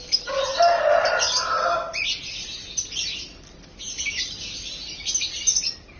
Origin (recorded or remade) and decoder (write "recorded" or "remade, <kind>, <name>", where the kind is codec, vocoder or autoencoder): recorded